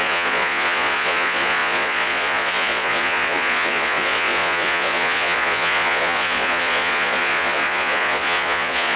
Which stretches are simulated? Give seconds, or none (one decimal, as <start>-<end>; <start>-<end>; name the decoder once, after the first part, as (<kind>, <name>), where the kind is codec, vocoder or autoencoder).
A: 0.0-9.0 (vocoder, Vocos)